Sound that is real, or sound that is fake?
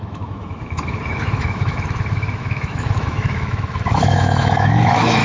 fake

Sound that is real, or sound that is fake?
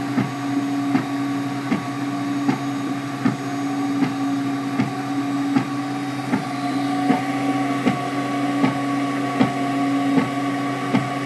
real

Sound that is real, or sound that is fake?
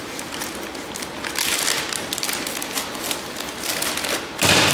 real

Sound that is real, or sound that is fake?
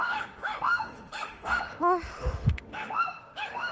fake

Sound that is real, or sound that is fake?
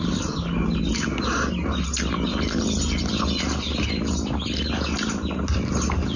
real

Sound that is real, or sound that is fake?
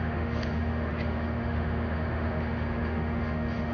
fake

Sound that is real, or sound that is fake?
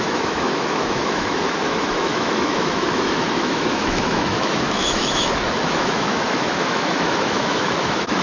fake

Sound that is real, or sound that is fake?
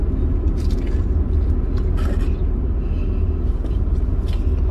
real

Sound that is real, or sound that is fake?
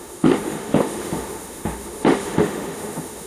fake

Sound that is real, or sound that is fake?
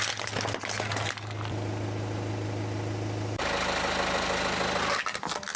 real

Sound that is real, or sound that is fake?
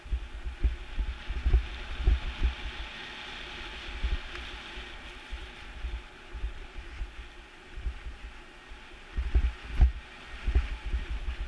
real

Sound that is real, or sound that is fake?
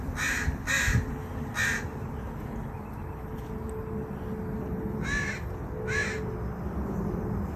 real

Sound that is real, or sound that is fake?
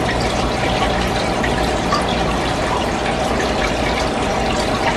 real